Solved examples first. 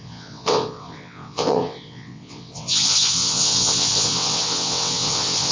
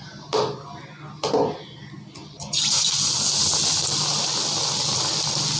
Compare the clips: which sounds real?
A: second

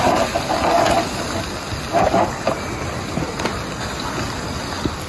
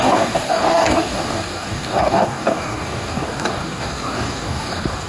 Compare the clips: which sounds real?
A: first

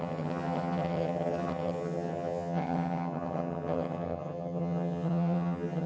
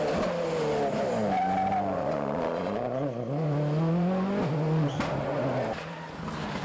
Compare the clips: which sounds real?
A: second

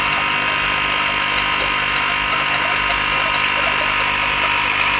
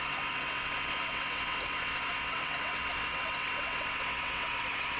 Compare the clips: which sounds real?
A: first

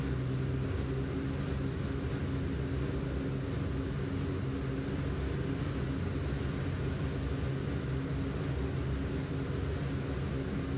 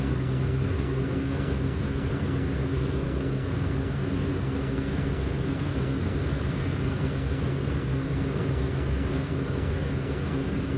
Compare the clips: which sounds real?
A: first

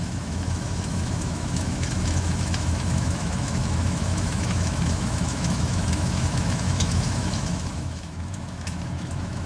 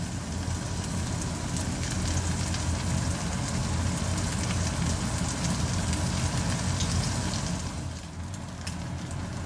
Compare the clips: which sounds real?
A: second